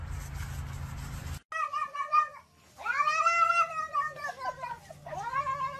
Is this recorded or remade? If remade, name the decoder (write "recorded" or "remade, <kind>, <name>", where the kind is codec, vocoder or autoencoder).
recorded